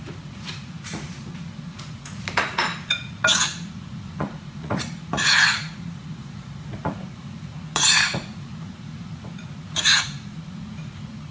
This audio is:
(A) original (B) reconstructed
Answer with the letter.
B